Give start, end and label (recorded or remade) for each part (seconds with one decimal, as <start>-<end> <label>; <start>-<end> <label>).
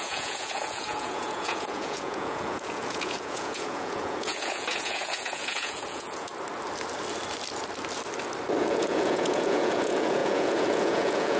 0.0-6.3 remade; 6.3-8.6 recorded; 8.6-11.4 remade